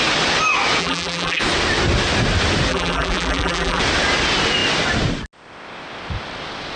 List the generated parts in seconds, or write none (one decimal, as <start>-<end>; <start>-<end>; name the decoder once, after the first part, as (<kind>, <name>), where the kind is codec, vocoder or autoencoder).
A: 0.8-1.4 (vocoder, BigVGAN v2); 2.7-3.8